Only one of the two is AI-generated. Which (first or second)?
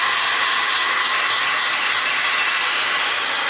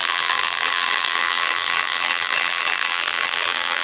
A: second